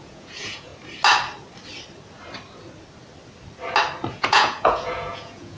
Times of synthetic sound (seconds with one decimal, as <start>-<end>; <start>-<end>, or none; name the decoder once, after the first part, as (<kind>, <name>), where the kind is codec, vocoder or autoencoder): 0.0-0.7 (vocoder, Vocos); 4.1-5.6